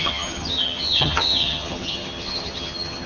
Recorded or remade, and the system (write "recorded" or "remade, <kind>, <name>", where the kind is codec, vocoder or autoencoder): remade, vocoder, HiFi-GAN